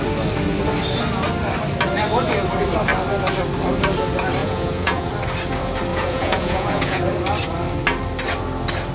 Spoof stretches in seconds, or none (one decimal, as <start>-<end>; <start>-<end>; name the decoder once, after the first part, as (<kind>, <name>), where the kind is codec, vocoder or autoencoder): 4.4-5.1 (vocoder, Vocos); 5.9-7.0